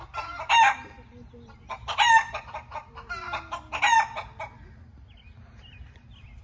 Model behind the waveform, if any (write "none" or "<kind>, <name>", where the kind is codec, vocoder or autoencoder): none